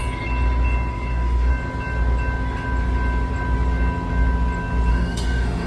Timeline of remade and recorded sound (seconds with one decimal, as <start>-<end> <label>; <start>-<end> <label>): 0.0-0.9 recorded; 0.9-1.5 remade; 1.5-4.9 recorded; 4.9-5.7 remade